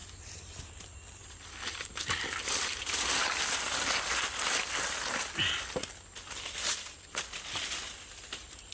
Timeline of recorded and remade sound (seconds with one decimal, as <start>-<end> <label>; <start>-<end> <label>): 0.0-8.7 recorded